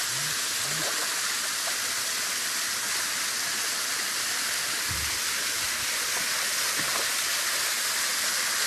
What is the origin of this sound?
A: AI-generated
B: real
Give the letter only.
B